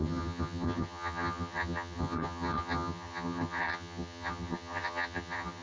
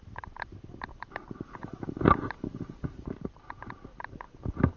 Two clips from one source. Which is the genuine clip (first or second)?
second